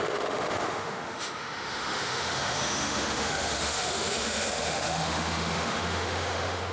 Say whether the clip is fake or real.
fake